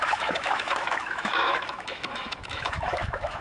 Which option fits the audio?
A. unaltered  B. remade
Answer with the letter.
B